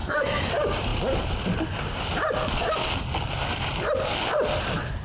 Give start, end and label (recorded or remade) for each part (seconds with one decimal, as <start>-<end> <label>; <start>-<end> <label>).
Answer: 0.0-0.5 remade; 0.5-5.0 recorded